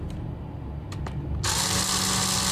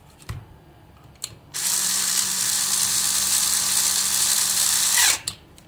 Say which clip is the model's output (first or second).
second